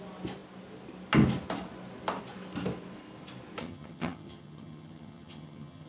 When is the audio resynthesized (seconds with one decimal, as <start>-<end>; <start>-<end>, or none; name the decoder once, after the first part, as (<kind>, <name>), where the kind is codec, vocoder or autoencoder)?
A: 3.6-5.9 (vocoder, HiFi-GAN)